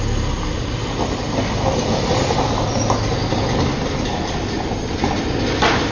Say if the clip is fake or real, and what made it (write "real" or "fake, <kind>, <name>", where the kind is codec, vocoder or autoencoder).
real